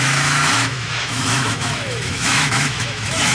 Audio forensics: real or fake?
fake